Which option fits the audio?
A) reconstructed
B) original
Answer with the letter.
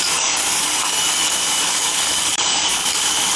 A